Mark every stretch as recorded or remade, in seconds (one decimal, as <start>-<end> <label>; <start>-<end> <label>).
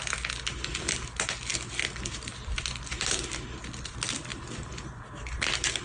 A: 0.0-5.8 recorded